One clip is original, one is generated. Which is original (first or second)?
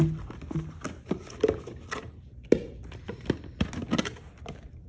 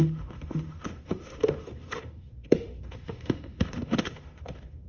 first